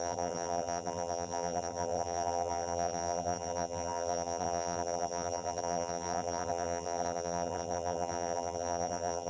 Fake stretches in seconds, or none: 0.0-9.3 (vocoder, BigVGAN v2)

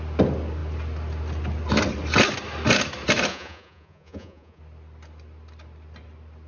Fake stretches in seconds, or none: 3.3-4.6 (vocoder, Vocos)

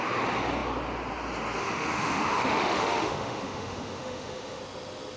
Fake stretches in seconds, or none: 1.6-4.6 (autoencoder, DAC-VAE)

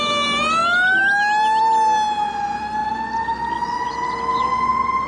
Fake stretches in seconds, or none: none

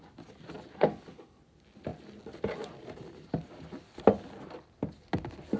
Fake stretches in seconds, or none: 0.7-1.4 (codec, HILCodec)

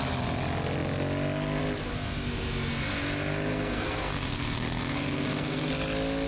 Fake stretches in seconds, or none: 3.5-5.7 (codec, SNAC)